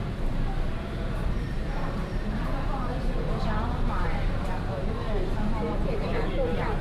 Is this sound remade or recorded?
remade